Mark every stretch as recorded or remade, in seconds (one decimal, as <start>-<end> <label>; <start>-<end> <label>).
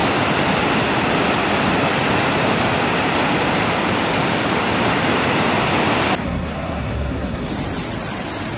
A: 0.0-6.2 recorded; 6.2-7.5 remade; 7.5-8.6 recorded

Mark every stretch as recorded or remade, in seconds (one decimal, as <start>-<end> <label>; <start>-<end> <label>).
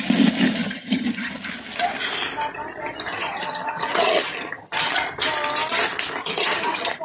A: 0.0-0.6 recorded; 0.6-1.3 remade; 1.3-3.1 recorded; 3.1-4.9 remade; 4.9-6.2 recorded; 6.2-7.0 remade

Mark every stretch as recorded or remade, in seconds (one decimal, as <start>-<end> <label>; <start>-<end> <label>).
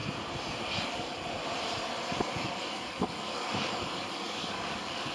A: 0.0-0.6 recorded; 0.6-1.4 remade; 1.4-2.3 recorded; 2.3-5.1 remade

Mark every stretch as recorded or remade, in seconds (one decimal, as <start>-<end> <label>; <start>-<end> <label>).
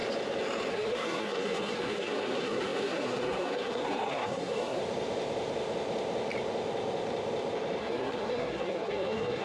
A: 0.0-0.7 recorded; 0.7-4.8 remade; 4.8-7.8 recorded; 7.8-9.4 remade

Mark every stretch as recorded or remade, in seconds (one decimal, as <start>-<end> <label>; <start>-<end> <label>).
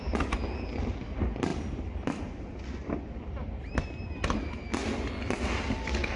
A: 0.0-6.2 recorded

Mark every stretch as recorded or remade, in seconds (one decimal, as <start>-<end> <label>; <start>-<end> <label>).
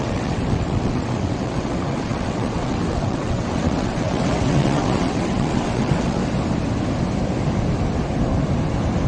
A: 0.0-6.2 remade; 6.2-9.1 recorded